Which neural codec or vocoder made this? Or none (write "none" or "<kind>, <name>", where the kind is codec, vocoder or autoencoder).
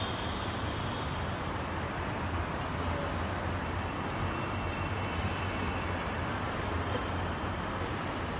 none